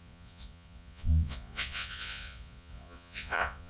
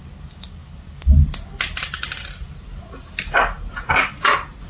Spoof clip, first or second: first